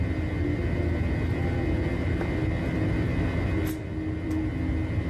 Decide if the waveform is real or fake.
real